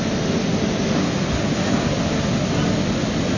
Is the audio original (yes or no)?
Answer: yes